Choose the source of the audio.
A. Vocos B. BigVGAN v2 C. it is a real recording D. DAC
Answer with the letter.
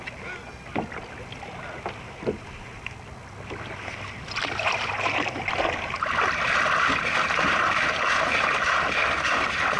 C